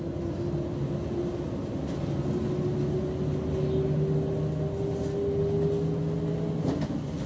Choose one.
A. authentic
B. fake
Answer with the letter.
A